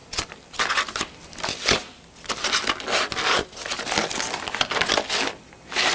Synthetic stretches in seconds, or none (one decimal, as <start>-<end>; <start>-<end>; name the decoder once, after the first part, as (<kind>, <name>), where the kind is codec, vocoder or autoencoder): none